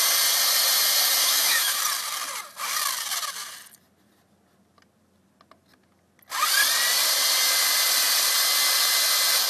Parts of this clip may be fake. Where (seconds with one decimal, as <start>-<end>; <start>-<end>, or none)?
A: 1.2-1.8